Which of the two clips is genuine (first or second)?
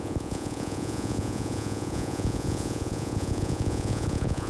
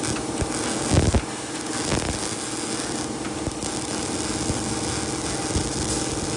second